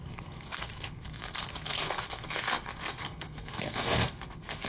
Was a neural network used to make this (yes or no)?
yes